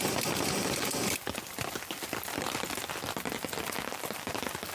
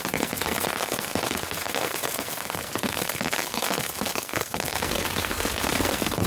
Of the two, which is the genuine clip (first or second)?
first